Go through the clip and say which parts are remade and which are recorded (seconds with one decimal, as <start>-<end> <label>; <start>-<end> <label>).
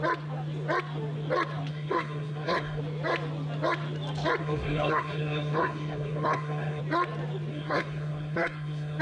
0.0-1.7 recorded; 1.7-2.8 remade; 2.8-4.4 recorded; 4.4-6.8 remade; 6.8-7.5 recorded; 7.5-9.0 remade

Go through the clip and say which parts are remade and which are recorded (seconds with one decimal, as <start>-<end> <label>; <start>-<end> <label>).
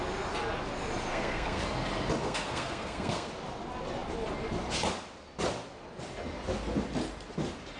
0.0-1.1 recorded; 1.1-1.6 remade; 1.6-2.2 recorded; 2.2-3.3 remade; 3.3-7.8 recorded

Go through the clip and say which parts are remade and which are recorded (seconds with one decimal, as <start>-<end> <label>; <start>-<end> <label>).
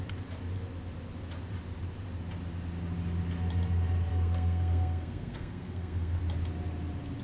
0.0-4.1 recorded; 4.1-6.2 remade; 6.2-7.2 recorded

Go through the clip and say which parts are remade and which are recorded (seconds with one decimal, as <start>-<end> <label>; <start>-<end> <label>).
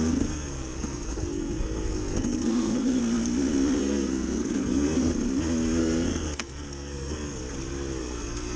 0.0-3.0 remade; 3.0-3.8 recorded; 3.8-5.1 remade; 5.1-5.8 recorded; 5.8-7.4 remade; 7.4-8.0 recorded; 8.0-8.6 remade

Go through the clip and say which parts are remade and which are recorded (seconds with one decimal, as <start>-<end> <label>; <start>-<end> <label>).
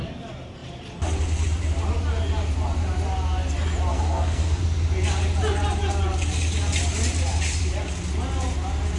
0.0-3.9 recorded; 3.9-4.6 remade; 4.6-9.0 recorded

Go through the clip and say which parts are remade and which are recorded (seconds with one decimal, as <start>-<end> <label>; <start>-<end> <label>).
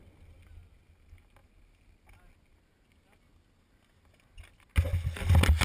0.0-5.6 recorded